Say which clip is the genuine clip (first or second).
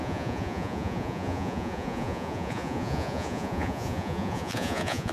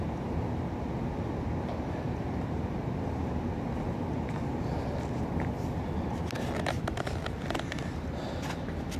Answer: second